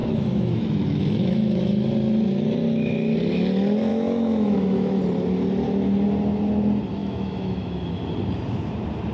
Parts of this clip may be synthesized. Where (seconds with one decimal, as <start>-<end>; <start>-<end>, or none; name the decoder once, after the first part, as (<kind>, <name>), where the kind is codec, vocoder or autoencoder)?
0.0-1.9 (autoencoder, DAC-VAE); 3.9-5.0; 7.0-8.0